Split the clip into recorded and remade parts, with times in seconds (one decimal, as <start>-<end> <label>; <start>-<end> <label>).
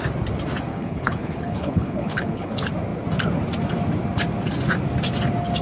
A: 0.0-0.7 recorded; 0.7-2.5 remade; 2.5-5.6 recorded